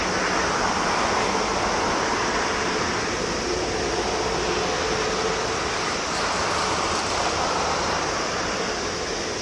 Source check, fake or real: real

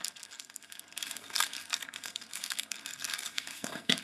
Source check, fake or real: fake